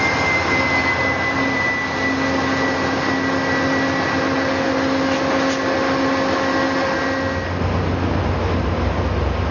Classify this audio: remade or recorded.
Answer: recorded